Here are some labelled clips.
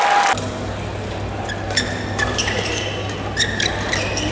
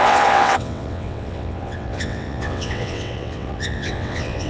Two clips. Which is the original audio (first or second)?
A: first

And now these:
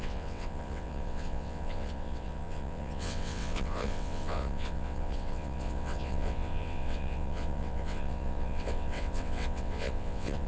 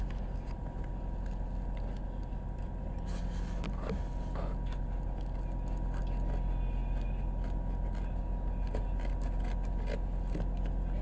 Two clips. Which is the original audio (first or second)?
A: second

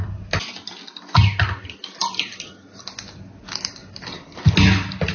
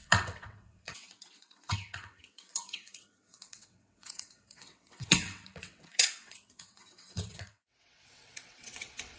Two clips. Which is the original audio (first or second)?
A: first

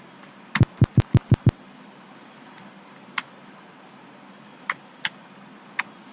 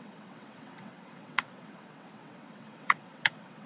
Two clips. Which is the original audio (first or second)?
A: first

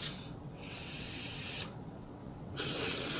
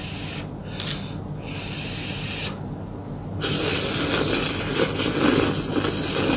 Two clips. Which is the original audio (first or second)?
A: second